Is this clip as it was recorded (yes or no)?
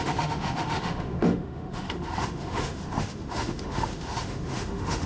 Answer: no